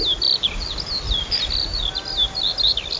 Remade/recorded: recorded